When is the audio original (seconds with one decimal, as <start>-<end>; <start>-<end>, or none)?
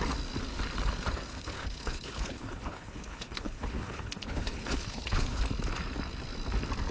0.0-1.3; 5.4-6.9